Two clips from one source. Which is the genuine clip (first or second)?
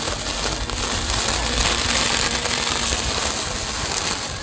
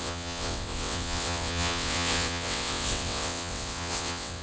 first